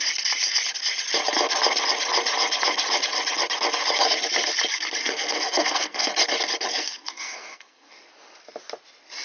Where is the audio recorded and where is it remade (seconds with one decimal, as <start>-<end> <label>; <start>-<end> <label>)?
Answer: 0.0-5.0 recorded; 5.0-6.1 remade; 6.1-6.7 recorded; 6.7-8.0 remade; 8.0-9.2 recorded